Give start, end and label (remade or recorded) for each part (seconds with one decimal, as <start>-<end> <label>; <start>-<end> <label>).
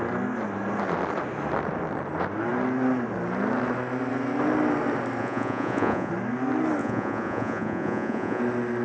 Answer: 0.0-5.2 recorded; 5.2-6.1 remade; 6.1-6.8 recorded; 6.8-8.4 remade; 8.4-8.8 recorded